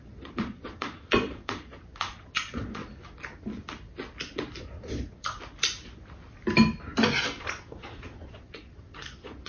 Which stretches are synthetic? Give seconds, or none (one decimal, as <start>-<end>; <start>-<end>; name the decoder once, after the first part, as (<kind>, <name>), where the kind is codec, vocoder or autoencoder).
0.0-2.8 (vocoder, Vocos); 4.6-5.3; 7.4-9.5